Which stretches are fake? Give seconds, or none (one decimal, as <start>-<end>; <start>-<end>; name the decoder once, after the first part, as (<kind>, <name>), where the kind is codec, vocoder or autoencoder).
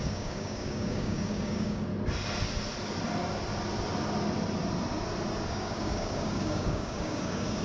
0.0-1.9 (codec, DAC); 5.5-7.6